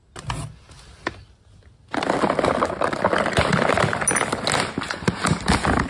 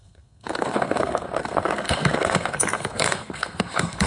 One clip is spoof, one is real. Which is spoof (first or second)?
second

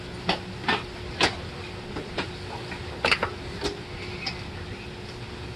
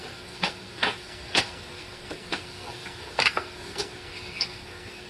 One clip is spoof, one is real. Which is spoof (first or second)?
second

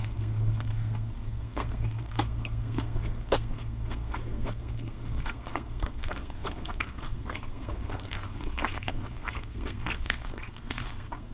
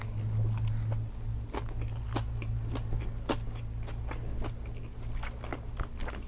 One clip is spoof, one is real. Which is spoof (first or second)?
first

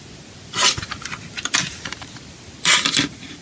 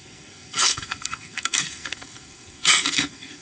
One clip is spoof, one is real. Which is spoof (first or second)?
second